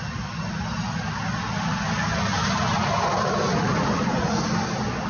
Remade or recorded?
recorded